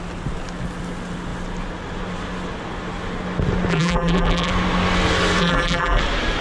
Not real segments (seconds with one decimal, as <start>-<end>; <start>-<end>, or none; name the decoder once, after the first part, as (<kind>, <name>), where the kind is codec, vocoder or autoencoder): 3.7-4.5 (vocoder, BigVGAN v2); 5.4-6.0